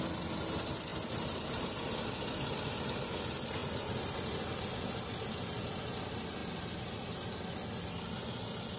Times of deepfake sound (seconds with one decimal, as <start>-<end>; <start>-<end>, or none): none